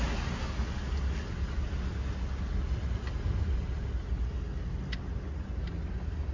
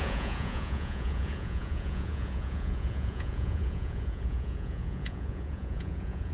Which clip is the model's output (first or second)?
second